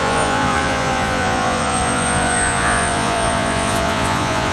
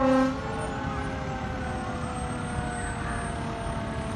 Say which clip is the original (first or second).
second